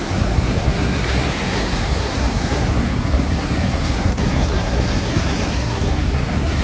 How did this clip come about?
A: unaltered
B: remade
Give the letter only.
B